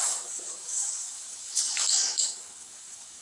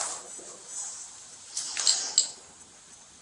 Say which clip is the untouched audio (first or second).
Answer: second